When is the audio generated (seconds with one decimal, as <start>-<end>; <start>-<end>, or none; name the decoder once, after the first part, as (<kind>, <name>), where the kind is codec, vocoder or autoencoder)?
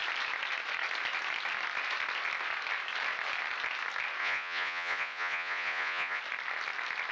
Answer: 4.2-6.2 (vocoder, Vocos)